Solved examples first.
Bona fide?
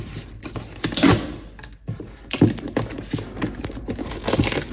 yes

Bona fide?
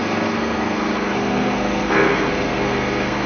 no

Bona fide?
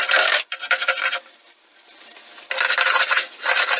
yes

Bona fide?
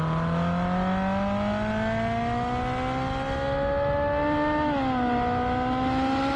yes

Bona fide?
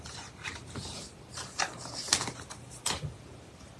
yes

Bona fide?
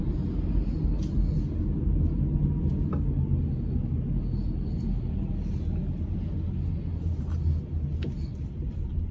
yes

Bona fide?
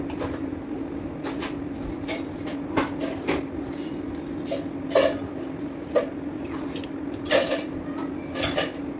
yes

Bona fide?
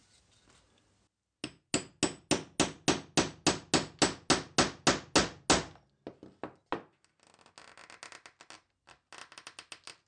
yes